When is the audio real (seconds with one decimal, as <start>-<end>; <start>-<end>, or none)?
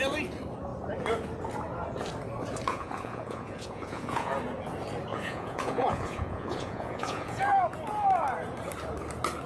0.0-2.7; 4.3-5.1; 7.4-9.5